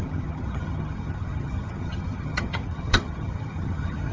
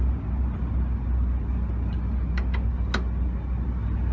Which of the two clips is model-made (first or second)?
first